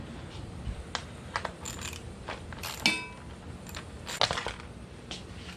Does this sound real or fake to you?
real